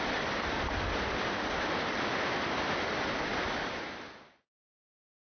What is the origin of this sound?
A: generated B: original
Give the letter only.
B